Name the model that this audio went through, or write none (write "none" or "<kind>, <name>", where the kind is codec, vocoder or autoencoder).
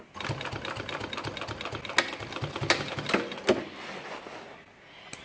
none